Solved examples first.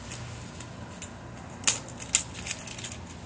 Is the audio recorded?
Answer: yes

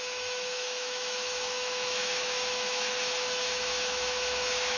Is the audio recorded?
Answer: no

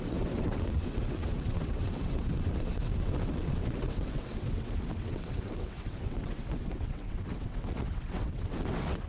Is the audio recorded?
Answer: no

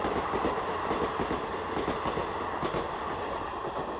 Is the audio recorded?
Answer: yes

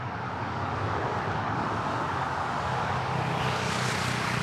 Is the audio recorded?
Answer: no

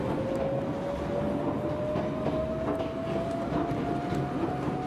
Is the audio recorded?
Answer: yes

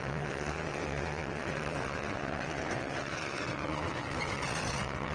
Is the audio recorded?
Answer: no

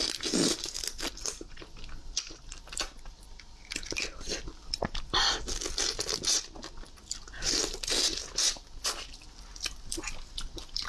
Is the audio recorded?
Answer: yes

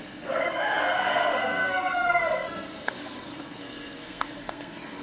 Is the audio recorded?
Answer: no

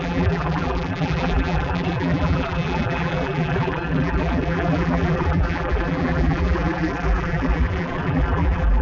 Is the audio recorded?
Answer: no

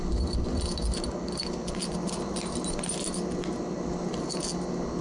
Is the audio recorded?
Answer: yes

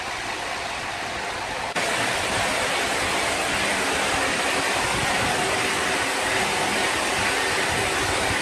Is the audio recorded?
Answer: yes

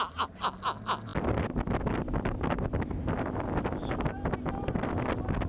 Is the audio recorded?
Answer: yes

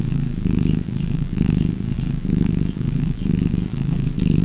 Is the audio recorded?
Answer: no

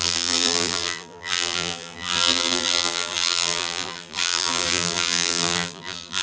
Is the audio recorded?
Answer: no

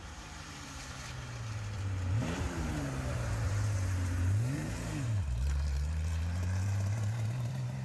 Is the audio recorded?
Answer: no